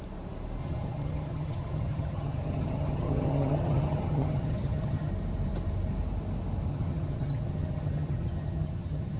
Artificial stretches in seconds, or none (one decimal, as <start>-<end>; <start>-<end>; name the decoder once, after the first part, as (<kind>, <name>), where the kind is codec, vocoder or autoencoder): 0.6-5.1 (vocoder, HiFi-GAN); 6.7-9.2